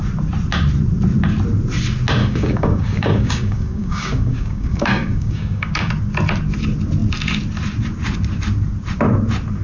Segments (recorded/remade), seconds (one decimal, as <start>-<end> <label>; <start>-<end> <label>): 0.0-2.2 recorded; 2.2-5.9 remade; 5.9-9.6 recorded